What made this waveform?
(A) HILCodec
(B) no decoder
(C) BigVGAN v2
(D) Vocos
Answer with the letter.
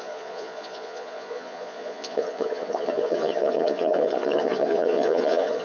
D